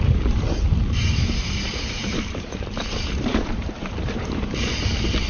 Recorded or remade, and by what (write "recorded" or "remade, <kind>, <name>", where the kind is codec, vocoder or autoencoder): remade, vocoder, BigVGAN v2